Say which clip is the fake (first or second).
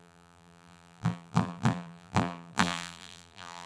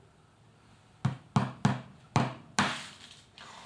first